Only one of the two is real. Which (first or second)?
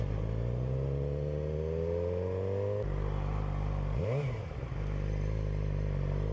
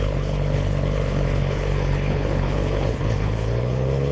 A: first